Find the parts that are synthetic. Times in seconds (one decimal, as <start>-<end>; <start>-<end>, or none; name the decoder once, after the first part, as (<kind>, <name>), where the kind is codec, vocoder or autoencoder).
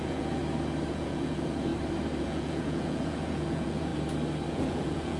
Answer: 0.0-0.4 (vocoder, Vocos); 0.9-1.7; 2.2-3.9; 4.5-5.2